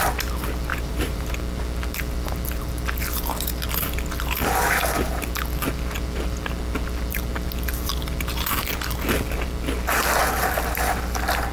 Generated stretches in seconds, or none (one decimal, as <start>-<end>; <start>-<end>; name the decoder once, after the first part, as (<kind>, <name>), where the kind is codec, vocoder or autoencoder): 0.7-1.3 (vocoder, BigVGAN v2)